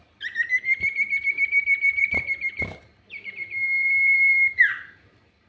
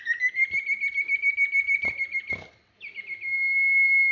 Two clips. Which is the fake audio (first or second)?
first